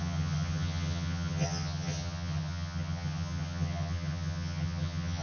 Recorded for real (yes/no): no